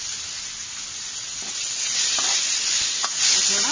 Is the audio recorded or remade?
recorded